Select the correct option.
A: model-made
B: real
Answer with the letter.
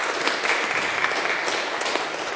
B